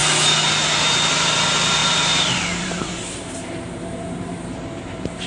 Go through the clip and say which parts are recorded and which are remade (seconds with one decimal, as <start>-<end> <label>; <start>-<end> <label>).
0.0-1.8 recorded; 1.8-5.3 remade